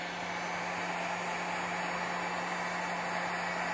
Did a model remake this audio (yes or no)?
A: no